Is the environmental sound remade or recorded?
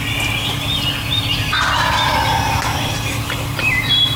recorded